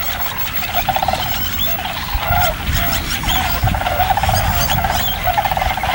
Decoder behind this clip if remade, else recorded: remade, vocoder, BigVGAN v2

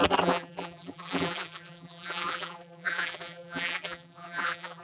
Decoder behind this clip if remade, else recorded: remade, vocoder, BigVGAN v2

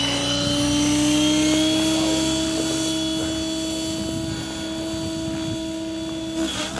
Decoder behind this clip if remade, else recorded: recorded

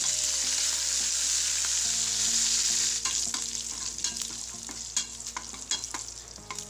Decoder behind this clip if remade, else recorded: recorded